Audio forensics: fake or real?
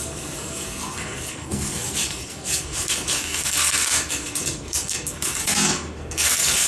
fake